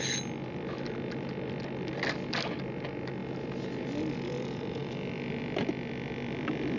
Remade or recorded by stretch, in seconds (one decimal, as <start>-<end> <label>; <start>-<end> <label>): 0.0-3.2 remade; 3.2-4.1 recorded; 4.1-6.8 remade